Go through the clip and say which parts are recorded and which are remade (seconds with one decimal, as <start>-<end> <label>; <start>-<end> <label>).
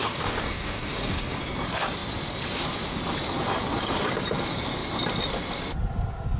0.0-1.4 remade; 1.4-6.4 recorded